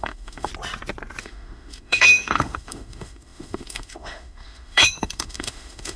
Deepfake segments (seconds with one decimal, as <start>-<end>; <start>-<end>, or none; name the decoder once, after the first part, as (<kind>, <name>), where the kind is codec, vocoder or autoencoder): 0.0-0.5 (autoencoder, DAC-VAE); 1.2-6.0